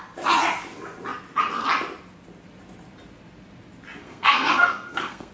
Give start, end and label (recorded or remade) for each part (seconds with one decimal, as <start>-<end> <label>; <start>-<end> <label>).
0.0-4.0 recorded; 4.0-5.3 remade